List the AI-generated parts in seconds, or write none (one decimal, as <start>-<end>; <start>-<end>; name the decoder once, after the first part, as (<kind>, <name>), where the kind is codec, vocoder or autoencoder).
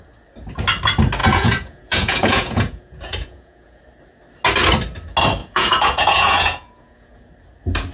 1.2-3.8 (vocoder, Vocos); 5.4-7.2